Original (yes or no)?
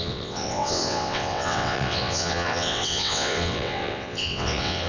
no